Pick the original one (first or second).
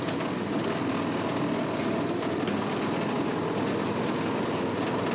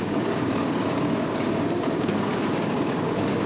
first